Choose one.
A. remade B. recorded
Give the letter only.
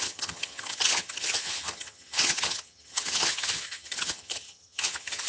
A